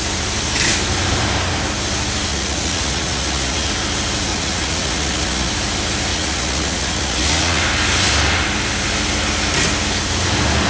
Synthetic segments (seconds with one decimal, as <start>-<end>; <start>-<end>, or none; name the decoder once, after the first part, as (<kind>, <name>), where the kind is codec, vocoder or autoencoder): 2.3-3.7 (vocoder, Vocos); 4.3-5.5; 6.1-7.6